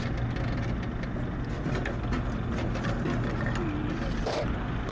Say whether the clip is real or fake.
real